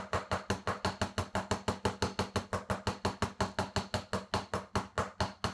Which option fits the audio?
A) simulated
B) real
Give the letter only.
B